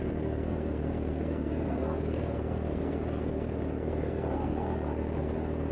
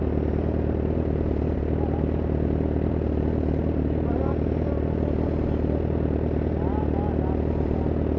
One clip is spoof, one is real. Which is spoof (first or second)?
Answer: first